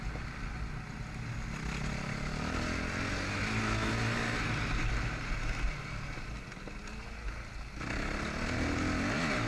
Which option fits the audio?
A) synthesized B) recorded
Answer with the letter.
B